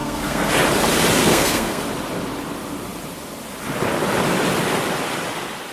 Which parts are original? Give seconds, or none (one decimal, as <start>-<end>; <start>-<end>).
0.5-1.2; 1.8-5.7